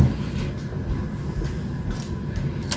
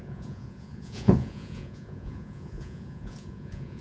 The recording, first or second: first